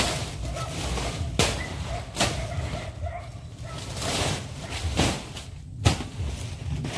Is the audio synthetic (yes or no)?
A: no